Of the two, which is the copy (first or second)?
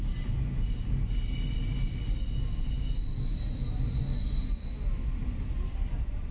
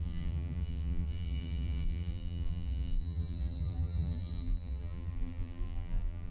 second